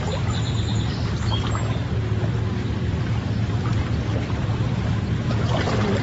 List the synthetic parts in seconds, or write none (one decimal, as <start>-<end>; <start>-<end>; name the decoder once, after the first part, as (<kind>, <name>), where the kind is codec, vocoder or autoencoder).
0.0-0.7 (vocoder, BigVGAN v2); 2.8-3.8; 4.5-6.0